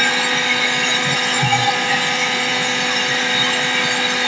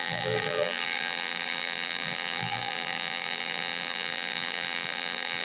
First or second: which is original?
first